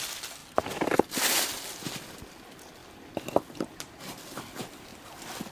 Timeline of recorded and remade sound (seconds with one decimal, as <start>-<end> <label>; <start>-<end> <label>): 0.0-5.5 recorded